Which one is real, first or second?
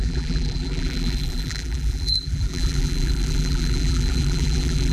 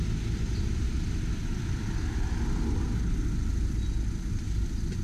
second